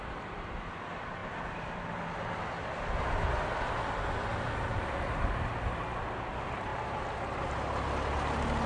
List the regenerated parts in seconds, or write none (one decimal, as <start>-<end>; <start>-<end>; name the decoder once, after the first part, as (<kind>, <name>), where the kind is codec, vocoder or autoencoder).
4.3-5.5 (vocoder, BigVGAN v2)